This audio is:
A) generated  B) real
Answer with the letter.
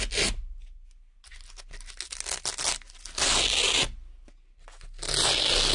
B